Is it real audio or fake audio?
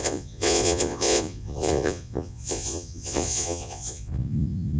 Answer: fake